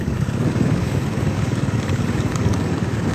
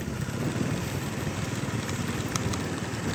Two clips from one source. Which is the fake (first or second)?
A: first